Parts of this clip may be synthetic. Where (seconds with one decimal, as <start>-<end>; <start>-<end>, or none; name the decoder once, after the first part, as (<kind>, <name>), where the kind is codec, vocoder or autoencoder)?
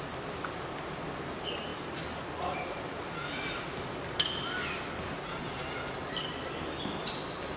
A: none